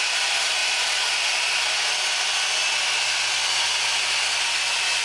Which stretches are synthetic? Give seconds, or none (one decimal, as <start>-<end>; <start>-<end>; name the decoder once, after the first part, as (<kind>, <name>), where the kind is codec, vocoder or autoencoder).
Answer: none